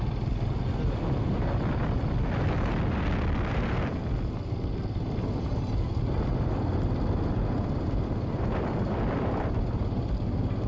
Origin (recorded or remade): recorded